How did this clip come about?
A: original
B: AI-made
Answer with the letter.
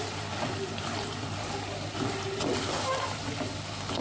A